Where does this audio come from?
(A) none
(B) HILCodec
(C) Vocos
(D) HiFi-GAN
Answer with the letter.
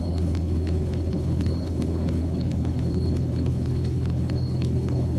B